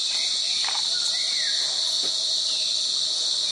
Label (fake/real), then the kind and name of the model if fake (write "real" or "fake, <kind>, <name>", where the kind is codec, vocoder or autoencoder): real